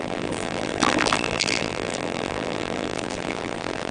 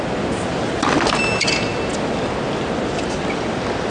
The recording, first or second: second